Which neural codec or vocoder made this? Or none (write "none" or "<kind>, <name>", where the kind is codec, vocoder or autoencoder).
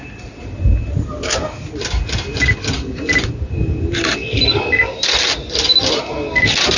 none